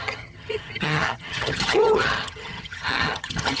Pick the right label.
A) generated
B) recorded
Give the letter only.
A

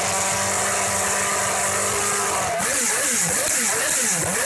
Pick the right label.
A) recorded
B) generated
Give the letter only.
A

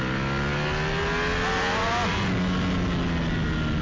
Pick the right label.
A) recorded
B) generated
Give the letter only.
A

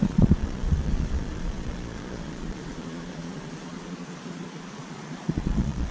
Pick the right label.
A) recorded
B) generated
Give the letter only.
B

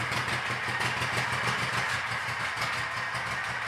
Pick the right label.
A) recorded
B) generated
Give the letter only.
A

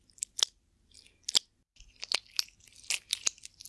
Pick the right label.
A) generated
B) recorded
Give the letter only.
B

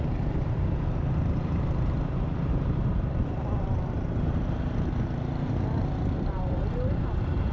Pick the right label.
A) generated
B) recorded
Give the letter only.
A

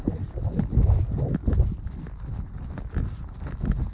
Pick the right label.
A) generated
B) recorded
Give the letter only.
B